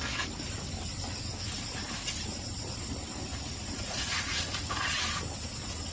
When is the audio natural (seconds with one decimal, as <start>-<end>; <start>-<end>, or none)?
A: 0.0-3.3; 4.5-5.9